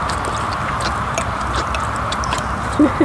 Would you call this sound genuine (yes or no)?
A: yes